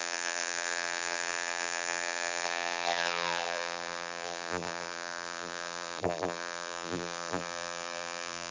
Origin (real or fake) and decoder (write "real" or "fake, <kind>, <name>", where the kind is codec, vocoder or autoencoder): fake, vocoder, BigVGAN v2